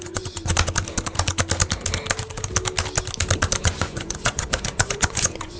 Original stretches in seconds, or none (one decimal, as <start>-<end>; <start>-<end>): 0.5-3.6